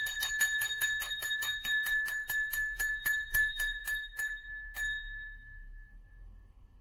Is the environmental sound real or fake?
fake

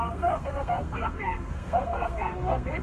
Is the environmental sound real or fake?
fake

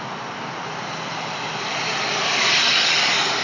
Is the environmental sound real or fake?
real